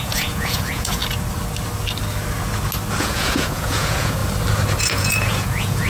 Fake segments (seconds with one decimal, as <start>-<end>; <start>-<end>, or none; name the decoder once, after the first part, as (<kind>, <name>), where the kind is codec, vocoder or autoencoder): 0.0-1.0 (vocoder, Vocos); 3.0-4.2; 4.8-5.9